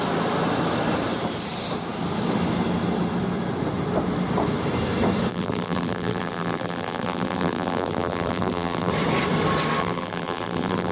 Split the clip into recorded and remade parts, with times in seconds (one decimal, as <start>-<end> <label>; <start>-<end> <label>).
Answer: 0.0-5.3 recorded; 5.3-8.9 remade; 8.9-9.8 recorded; 9.8-10.9 remade